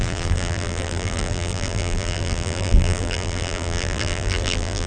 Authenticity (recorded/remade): remade